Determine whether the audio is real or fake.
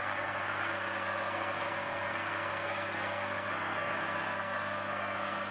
fake